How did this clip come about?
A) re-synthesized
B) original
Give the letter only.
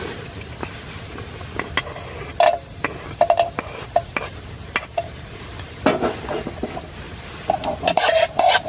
B